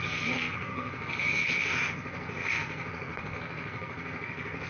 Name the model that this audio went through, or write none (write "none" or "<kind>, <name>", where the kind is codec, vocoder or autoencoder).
codec, SNAC